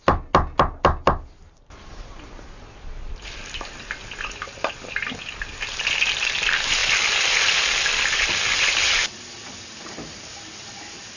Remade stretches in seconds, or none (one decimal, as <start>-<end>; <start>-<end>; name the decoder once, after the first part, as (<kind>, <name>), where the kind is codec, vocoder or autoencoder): none